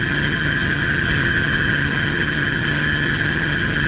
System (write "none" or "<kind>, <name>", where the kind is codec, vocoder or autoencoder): vocoder, HiFi-GAN